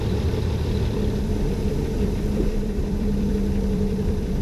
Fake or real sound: fake